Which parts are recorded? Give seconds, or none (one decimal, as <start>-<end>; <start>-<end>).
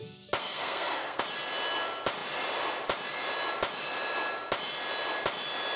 0.0-0.4; 1.2-5.8